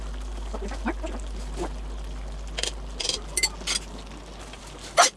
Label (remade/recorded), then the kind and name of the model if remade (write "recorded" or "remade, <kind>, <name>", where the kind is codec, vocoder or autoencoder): recorded